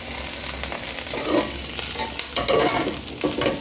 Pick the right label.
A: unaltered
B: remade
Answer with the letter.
A